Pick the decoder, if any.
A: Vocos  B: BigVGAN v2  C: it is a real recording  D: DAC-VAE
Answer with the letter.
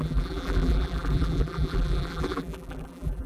B